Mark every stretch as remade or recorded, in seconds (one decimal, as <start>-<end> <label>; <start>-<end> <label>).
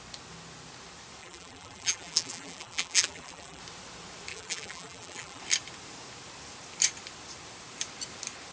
0.0-1.2 recorded; 1.2-3.6 remade; 3.6-4.3 recorded; 4.3-5.4 remade; 5.4-8.5 recorded